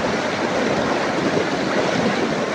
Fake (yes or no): no